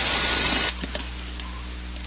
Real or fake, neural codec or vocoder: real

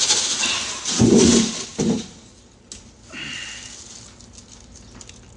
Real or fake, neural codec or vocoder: real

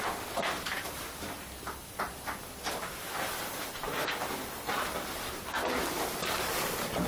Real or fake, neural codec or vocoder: real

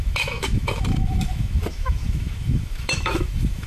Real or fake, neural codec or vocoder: fake, autoencoder, DAC-VAE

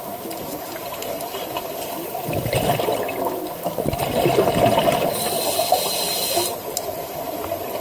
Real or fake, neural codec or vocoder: real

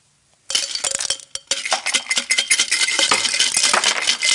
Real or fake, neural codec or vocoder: real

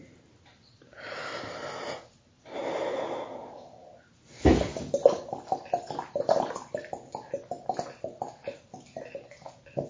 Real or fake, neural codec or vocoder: real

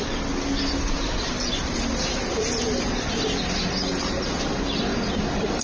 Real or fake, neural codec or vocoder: real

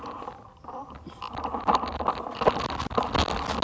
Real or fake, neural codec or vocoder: real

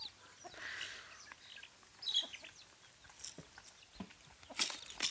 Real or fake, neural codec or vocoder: real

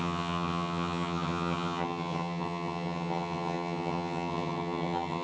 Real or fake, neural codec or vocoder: fake, vocoder, HiFi-GAN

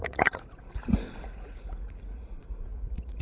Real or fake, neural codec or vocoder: fake, vocoder, Vocos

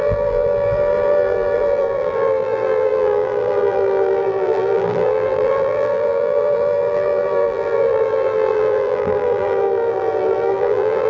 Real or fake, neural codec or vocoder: fake, vocoder, BigVGAN v2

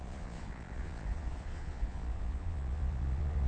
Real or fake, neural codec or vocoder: fake, vocoder, Vocos